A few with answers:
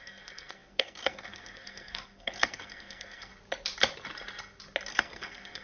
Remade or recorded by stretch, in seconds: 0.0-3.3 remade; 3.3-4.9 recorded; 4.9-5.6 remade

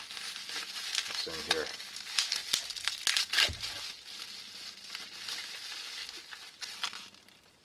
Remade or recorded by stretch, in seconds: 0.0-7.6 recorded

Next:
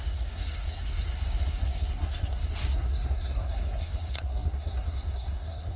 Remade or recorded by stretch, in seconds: 0.0-5.8 remade

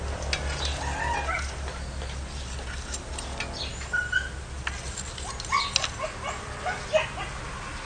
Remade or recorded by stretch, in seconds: 0.0-7.9 recorded

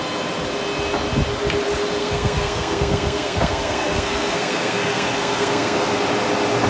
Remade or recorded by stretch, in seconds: 0.0-2.0 recorded; 2.0-6.0 remade; 6.0-6.7 recorded

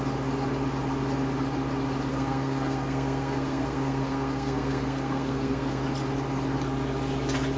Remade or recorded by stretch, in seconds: 0.0-2.1 recorded; 2.1-5.8 remade; 5.8-7.6 recorded